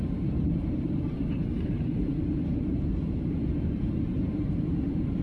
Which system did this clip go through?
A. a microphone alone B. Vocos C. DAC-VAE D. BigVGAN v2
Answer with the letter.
D